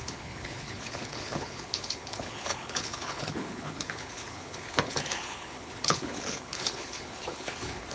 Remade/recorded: remade